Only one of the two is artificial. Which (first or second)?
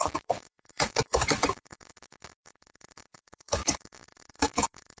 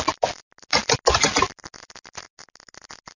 first